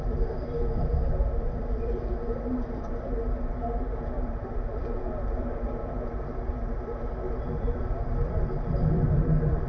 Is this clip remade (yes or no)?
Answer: yes